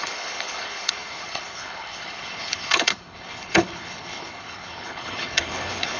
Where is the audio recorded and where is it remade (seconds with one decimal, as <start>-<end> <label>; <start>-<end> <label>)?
0.0-6.0 remade